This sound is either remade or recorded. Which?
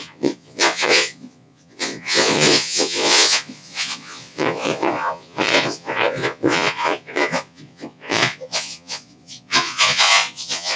remade